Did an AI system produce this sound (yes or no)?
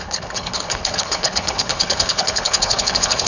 yes